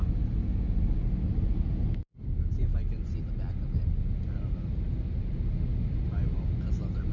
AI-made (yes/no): no